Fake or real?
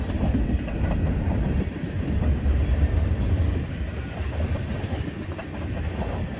real